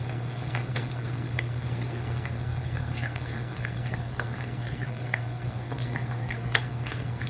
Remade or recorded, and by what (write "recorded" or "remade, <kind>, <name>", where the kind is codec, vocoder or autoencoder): remade, codec, SNAC